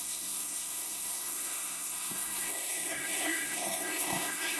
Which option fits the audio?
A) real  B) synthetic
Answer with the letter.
B